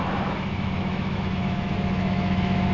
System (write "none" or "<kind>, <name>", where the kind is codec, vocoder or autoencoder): autoencoder, DAC-VAE